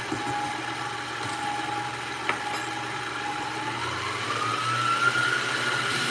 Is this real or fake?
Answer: real